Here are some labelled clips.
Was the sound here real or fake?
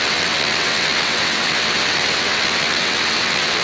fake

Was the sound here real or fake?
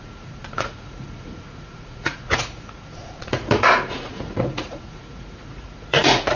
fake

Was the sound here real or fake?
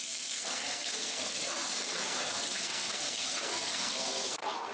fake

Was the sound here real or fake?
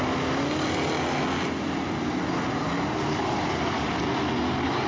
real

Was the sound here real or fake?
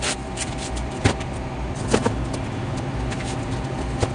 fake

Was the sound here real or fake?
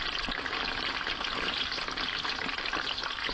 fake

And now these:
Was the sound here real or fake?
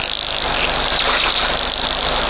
real